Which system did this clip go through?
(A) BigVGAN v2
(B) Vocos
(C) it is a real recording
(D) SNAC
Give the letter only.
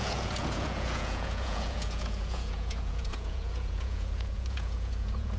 B